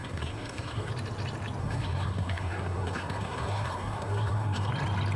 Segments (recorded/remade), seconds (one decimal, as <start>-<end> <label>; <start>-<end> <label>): 0.0-0.9 remade; 0.9-1.6 recorded; 1.6-4.7 remade; 4.7-5.2 recorded